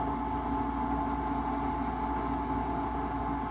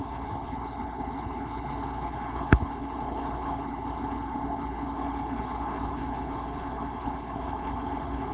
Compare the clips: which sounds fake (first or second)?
second